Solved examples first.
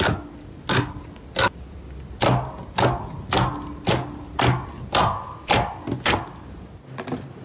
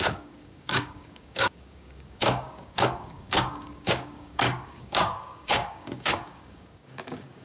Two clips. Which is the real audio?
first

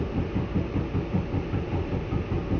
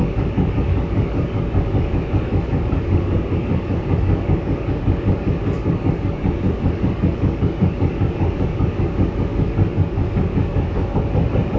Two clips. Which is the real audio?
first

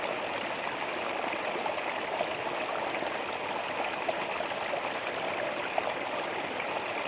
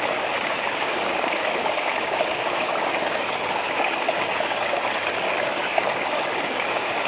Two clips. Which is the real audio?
first